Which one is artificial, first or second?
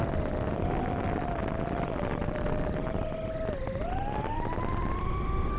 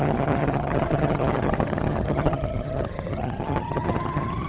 second